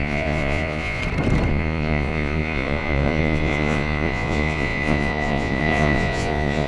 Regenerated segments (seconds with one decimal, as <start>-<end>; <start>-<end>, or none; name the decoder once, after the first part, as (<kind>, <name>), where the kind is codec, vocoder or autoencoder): 0.0-1.0 (vocoder, Vocos); 1.5-6.7